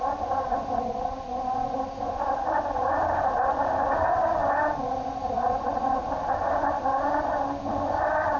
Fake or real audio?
real